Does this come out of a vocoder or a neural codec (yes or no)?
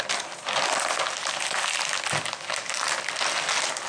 no